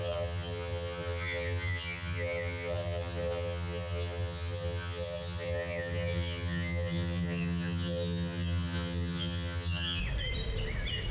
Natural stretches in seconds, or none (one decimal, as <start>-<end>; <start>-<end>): 10.0-11.1